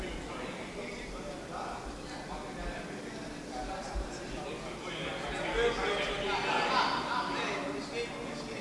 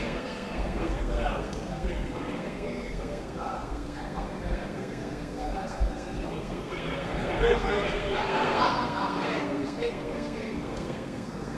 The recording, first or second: first